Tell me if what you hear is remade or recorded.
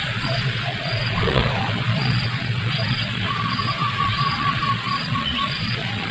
remade